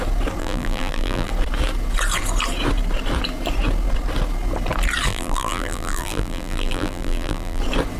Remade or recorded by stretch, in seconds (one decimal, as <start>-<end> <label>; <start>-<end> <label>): 0.0-0.4 recorded; 0.4-1.3 remade; 1.3-5.1 recorded; 5.1-7.6 remade; 7.6-8.0 recorded